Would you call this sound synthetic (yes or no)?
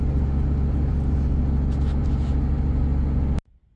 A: no